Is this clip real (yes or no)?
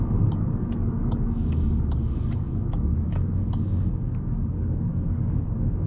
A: no